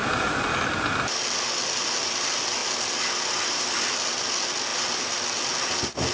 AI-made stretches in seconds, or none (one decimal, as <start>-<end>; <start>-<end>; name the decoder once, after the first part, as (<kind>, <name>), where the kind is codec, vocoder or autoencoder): none